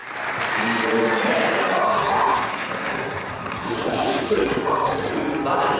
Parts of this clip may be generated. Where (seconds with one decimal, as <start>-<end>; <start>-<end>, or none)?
1.6-5.1